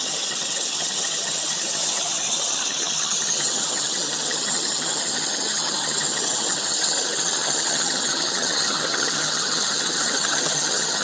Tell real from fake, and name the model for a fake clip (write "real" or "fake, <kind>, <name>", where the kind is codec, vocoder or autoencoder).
fake, vocoder, HiFi-GAN